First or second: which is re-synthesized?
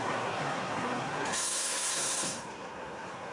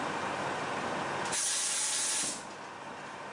first